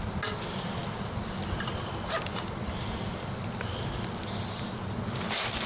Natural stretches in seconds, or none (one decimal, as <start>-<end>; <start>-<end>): 0.0-5.7